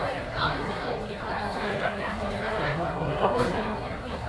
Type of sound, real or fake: fake